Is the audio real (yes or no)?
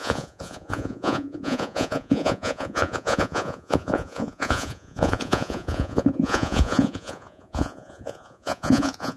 no